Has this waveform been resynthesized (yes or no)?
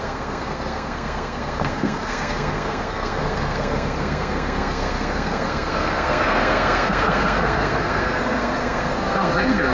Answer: yes